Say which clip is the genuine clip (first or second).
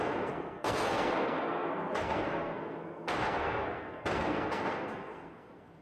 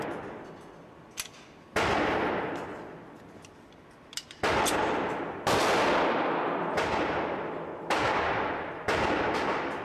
second